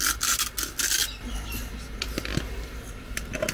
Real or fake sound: real